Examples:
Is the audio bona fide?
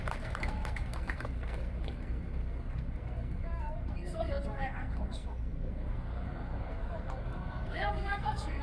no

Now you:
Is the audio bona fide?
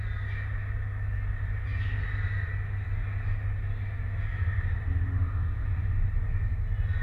yes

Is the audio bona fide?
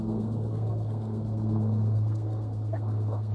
no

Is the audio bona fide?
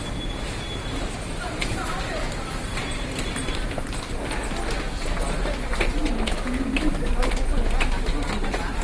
yes